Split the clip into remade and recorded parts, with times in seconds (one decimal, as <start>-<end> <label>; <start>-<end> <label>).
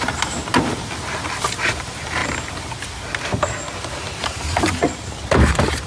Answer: 0.0-0.4 remade; 0.4-1.8 recorded; 1.8-2.2 remade; 2.2-4.2 recorded; 4.2-5.9 remade